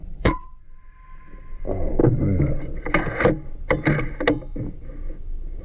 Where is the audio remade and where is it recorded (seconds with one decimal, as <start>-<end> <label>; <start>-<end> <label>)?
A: 0.0-0.6 remade; 0.6-5.6 recorded